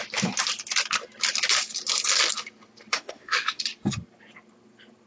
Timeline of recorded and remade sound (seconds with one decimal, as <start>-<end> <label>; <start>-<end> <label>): 0.0-2.9 recorded; 2.9-3.6 remade; 3.6-5.1 recorded